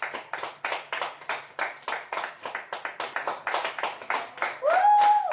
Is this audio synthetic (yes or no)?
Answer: no